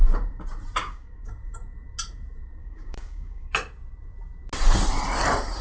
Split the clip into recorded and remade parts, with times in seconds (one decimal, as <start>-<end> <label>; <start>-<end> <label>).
0.0-0.8 recorded; 0.8-1.3 remade; 1.3-2.6 recorded; 2.6-3.5 remade; 3.5-5.6 recorded